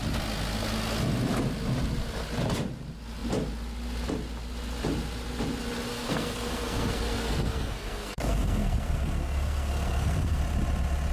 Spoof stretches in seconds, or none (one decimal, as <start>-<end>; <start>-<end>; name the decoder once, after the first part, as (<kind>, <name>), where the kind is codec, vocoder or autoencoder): 5.9-10.4 (codec, SNAC)